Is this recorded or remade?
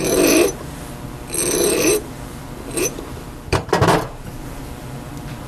remade